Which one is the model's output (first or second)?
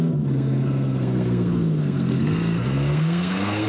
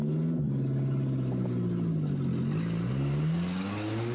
first